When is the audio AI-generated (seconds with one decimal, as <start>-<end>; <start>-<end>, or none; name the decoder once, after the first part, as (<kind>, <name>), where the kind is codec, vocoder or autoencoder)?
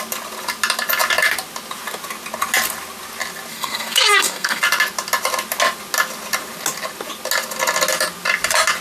3.5-4.6 (codec, SNAC)